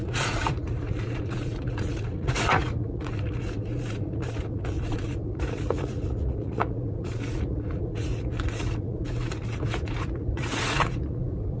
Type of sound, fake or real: fake